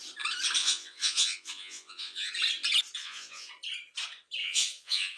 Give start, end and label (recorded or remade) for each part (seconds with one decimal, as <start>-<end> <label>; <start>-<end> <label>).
0.0-0.6 recorded; 0.6-2.3 remade; 2.3-3.0 recorded; 3.0-3.5 remade; 3.5-4.4 recorded; 4.4-5.2 remade